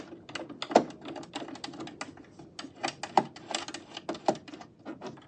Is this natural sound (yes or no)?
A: yes